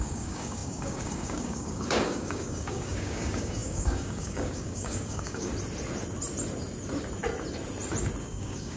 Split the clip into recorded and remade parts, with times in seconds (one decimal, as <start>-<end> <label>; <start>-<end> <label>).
0.0-5.5 remade; 5.5-8.2 recorded; 8.2-8.8 remade